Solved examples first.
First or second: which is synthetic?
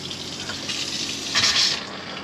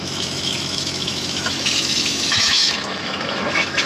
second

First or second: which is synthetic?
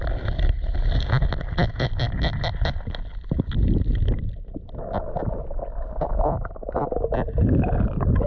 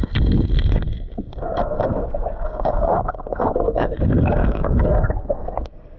second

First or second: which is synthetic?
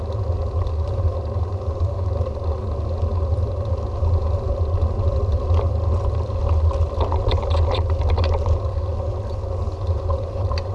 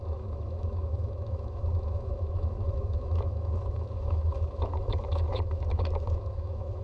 second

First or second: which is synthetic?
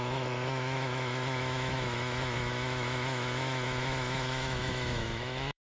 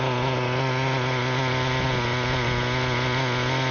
first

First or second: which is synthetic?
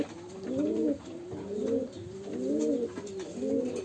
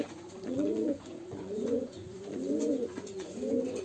second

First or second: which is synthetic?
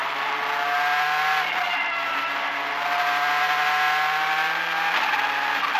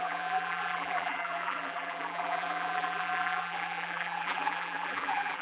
second